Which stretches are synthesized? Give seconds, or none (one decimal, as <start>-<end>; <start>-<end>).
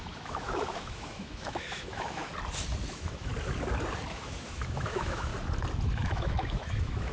0.0-2.3; 2.9-3.3; 4.1-5.3; 6.0-7.1